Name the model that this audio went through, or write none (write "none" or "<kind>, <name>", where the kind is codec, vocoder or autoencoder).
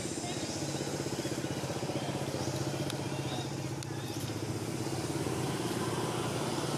none